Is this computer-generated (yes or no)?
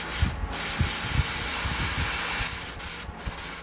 no